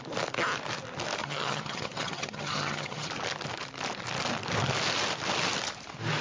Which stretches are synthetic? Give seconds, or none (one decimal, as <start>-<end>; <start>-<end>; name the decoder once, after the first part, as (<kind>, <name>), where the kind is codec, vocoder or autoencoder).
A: 1.2-3.1 (vocoder, HiFi-GAN)